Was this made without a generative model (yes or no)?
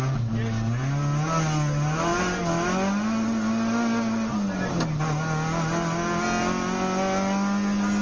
yes